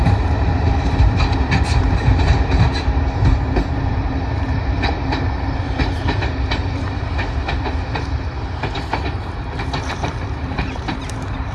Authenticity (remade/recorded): remade